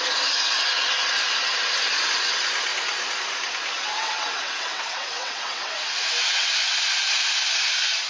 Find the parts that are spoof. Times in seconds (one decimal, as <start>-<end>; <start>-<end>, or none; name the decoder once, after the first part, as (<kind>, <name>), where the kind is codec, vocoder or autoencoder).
3.8-6.5 (vocoder, WaveNeXt)